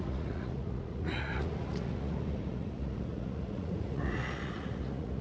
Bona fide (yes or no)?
no